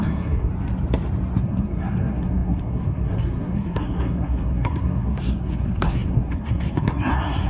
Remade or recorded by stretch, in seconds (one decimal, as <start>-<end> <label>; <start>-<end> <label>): 0.0-0.5 remade; 0.5-1.4 recorded; 1.4-7.5 remade